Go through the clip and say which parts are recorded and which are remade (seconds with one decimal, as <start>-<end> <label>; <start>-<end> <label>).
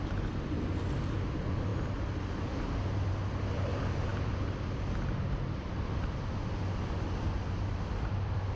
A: 0.0-8.6 recorded